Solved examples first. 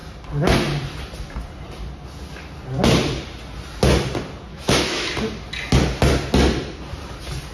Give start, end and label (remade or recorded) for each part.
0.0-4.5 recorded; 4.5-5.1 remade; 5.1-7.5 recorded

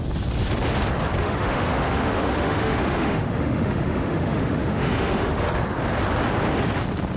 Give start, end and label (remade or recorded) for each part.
0.0-1.2 recorded; 1.2-5.5 remade; 5.5-7.2 recorded

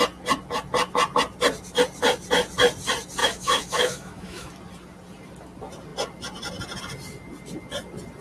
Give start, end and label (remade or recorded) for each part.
0.0-3.2 recorded; 3.2-4.5 remade; 4.5-8.2 recorded